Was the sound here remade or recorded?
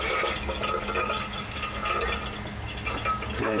recorded